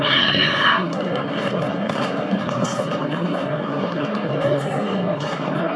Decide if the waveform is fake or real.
fake